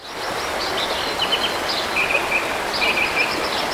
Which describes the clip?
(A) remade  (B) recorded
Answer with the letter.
B